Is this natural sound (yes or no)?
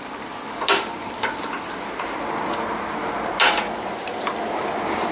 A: yes